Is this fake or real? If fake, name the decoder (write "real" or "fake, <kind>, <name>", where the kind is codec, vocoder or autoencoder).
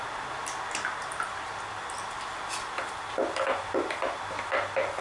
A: real